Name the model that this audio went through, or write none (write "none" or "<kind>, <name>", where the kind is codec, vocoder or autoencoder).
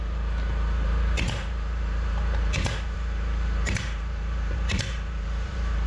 vocoder, BigVGAN v2